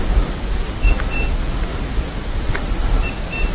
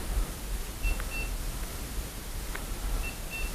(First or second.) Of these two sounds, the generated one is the first